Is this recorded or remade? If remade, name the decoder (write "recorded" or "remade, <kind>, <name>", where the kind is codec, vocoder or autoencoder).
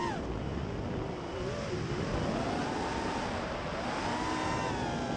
recorded